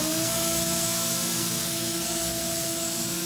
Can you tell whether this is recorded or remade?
remade